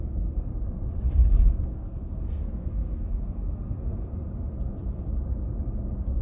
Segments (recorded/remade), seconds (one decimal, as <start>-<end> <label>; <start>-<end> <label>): 0.0-0.5 remade; 0.5-1.5 recorded; 1.5-4.1 remade; 4.1-6.2 recorded